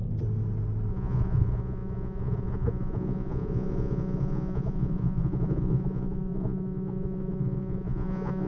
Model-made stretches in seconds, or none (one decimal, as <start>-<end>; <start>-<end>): 0.9-8.5